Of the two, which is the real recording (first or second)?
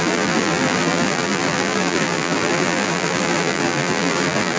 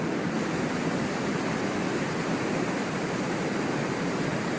second